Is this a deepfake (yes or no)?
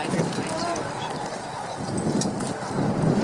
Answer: no